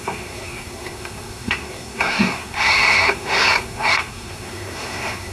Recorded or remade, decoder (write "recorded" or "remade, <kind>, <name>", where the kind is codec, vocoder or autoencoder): remade, codec, SNAC